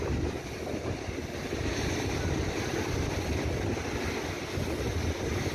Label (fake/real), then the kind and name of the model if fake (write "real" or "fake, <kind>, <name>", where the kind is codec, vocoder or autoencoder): real